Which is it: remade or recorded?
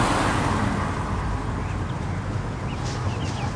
recorded